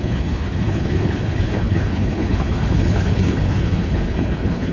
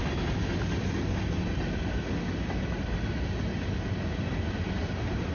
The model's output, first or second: first